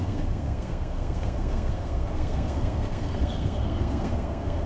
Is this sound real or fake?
fake